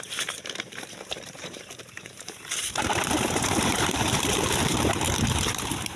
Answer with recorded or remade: remade